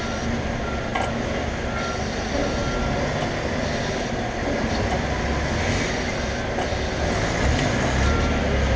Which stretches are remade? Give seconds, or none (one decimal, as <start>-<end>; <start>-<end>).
none